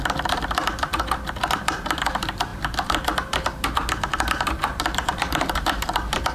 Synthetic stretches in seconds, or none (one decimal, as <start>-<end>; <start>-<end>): 0.0-0.9; 1.4-6.3

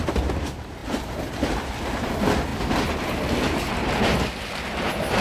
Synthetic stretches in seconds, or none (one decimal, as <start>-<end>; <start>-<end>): 0.8-2.1

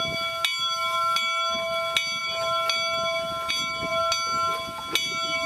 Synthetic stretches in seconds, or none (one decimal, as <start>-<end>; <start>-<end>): none

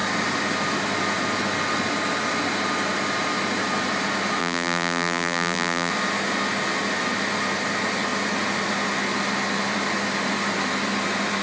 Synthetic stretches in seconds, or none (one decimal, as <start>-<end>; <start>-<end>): 4.4-5.9

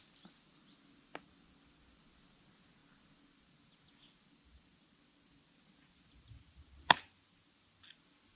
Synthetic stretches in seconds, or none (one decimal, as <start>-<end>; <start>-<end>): 1.1-2.0; 2.8-3.4; 4.7-6.9